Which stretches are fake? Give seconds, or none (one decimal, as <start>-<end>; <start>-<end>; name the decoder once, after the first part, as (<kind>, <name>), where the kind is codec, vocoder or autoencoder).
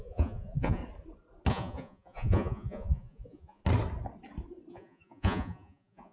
0.0-0.8 (vocoder, Vocos); 1.5-3.6; 4.7-6.1